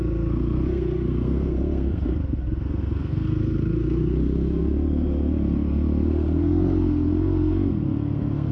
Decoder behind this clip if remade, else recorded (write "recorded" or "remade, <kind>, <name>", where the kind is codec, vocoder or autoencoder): remade, codec, SNAC